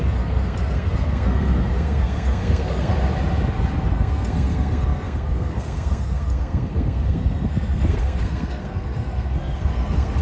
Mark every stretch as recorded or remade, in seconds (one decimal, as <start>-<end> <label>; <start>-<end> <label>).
0.0-2.9 remade; 2.9-3.9 recorded; 3.9-10.2 remade